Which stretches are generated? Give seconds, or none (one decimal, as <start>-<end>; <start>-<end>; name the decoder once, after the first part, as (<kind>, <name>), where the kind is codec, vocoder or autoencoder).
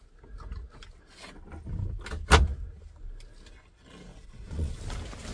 4.1-4.8 (vocoder, Vocos)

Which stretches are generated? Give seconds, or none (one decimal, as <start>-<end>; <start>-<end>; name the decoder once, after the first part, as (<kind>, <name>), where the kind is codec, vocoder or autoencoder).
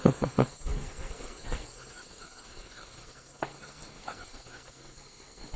0.0-5.6 (codec, SNAC)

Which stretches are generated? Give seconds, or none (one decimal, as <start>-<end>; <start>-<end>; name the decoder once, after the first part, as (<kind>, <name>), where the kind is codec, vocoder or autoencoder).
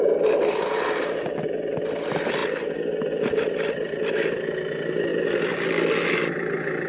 none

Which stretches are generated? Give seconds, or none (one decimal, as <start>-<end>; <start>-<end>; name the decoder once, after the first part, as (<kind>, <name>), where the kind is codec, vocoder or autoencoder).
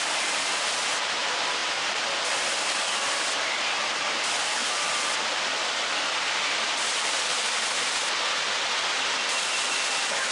none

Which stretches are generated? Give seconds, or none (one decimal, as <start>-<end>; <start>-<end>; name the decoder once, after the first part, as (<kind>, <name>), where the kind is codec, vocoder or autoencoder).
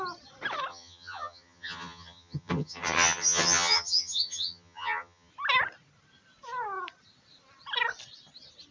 0.7-5.3 (vocoder, HiFi-GAN)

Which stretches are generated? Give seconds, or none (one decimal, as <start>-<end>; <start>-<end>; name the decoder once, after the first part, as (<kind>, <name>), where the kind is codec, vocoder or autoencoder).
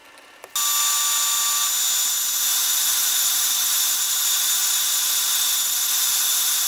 2.5-6.7 (vocoder, BigVGAN v2)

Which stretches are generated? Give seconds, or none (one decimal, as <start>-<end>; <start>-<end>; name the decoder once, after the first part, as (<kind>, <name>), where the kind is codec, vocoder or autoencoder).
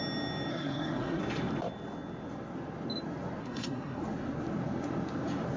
0.5-1.2 (codec, SNAC); 3.4-4.0